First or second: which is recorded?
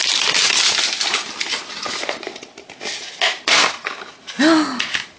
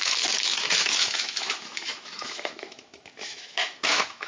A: first